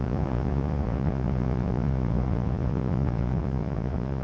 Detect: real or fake fake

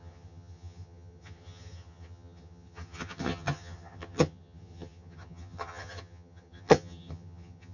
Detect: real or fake fake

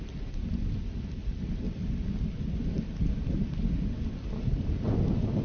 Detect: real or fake real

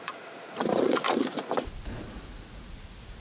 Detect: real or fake fake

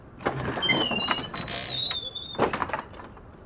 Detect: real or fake fake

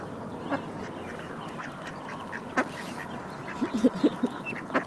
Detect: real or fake real